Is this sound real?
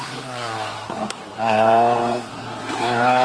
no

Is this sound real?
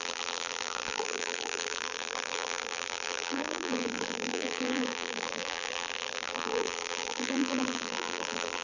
no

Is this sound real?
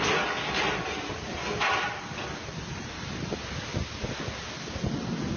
yes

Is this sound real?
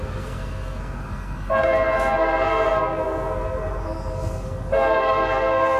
no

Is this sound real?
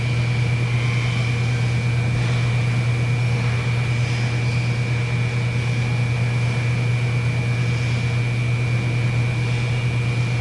yes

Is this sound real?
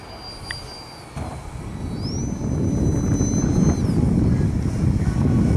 yes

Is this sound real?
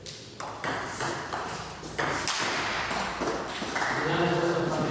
yes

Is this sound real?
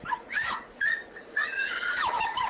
no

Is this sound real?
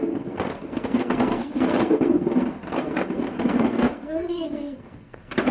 no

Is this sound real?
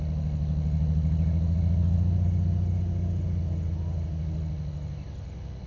yes